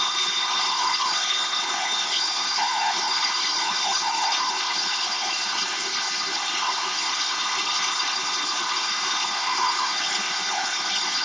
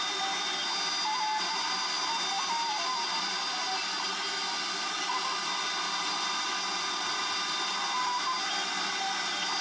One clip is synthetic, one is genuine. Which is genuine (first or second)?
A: second